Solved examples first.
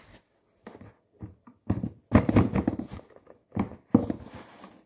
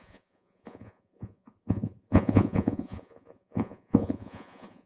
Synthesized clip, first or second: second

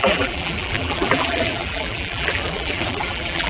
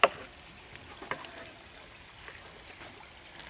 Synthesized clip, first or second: first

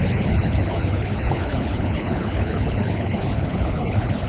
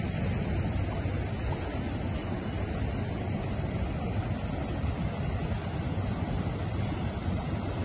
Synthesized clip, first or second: first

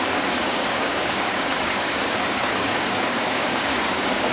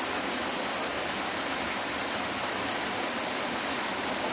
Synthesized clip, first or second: first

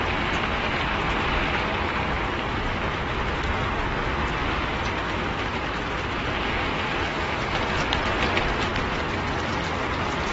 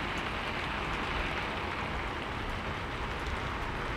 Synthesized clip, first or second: first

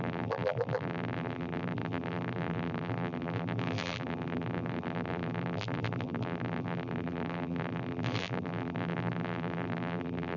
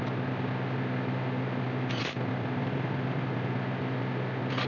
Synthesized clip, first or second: first